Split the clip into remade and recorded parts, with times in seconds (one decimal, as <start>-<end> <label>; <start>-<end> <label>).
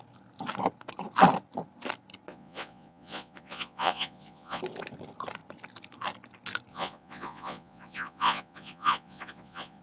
0.0-2.3 recorded; 2.3-4.6 remade; 4.6-6.7 recorded; 6.7-9.8 remade